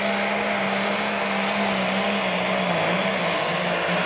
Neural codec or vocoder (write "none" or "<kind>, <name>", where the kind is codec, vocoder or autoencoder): none